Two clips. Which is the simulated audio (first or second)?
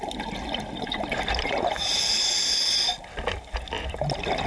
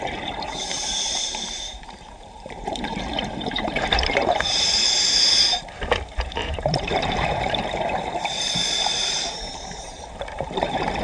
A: second